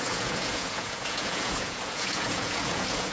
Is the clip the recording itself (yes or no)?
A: no